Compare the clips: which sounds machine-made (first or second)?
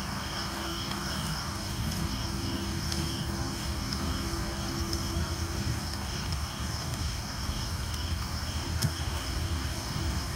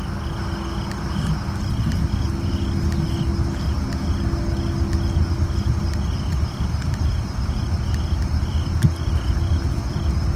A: first